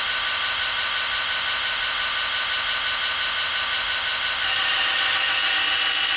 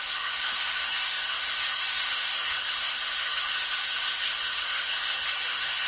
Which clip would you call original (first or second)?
first